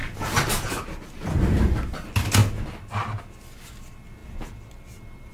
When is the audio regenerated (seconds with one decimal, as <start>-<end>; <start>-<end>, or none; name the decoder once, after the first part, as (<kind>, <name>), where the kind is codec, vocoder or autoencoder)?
none

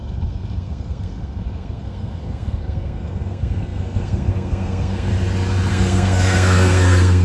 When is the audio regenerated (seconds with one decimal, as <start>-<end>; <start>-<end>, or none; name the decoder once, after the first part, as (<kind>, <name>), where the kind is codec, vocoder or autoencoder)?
0.0-5.1 (codec, SNAC); 5.7-7.2